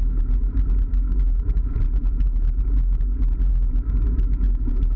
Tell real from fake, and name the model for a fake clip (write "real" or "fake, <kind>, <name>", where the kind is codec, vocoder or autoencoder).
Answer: real